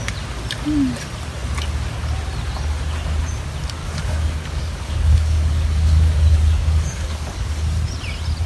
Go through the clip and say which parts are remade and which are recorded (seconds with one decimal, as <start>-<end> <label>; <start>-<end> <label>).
0.0-3.8 recorded; 3.8-7.6 remade; 7.6-8.5 recorded